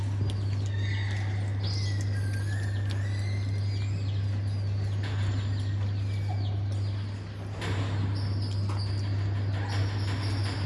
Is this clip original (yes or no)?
yes